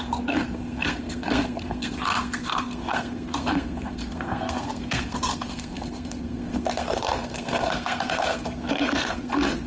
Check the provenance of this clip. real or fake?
fake